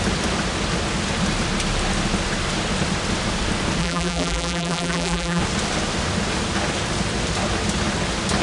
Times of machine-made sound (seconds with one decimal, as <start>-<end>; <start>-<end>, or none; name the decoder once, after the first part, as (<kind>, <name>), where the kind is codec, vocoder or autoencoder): 3.8-5.4 (vocoder, BigVGAN v2)